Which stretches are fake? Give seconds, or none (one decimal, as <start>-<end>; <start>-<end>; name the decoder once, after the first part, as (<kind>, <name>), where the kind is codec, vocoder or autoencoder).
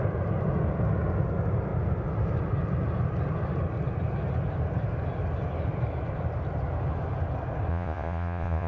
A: 7.7-8.7 (vocoder, Vocos)